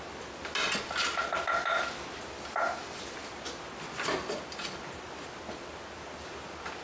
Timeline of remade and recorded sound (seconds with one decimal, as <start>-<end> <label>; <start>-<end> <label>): 0.0-6.8 recorded